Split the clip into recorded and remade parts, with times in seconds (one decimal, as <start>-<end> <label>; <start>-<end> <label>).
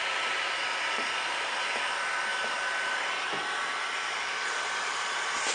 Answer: 0.0-5.5 recorded